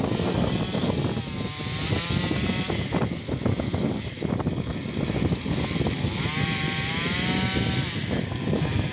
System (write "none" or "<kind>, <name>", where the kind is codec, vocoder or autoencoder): none